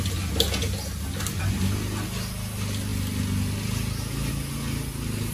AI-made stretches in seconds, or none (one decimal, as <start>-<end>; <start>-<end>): none